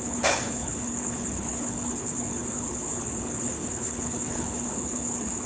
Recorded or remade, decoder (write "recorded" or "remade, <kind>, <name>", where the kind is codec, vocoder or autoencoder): remade, codec, HILCodec